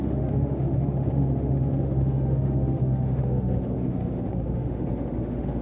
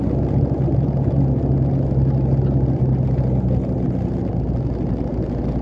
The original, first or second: second